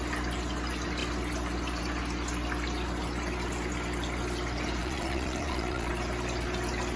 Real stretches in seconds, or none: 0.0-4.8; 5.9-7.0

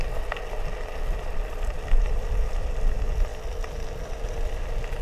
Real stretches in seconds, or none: 0.0-5.0

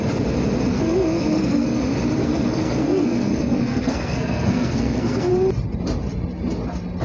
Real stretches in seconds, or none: 0.0-0.7; 1.8-2.2; 5.3-7.0

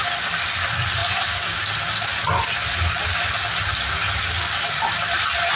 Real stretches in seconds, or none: 0.0-5.6

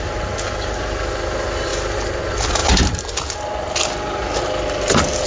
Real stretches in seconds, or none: 0.0-5.3